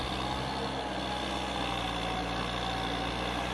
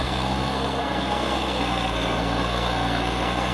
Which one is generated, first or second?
second